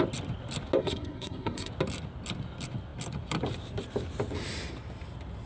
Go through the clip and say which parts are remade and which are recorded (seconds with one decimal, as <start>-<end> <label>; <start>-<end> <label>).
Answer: 0.0-0.8 recorded; 0.8-1.7 remade; 1.7-5.5 recorded